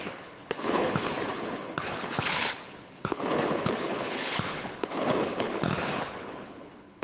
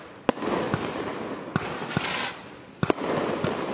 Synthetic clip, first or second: first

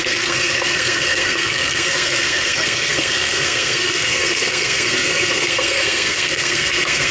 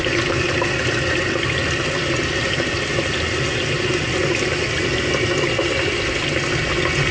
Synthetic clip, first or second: first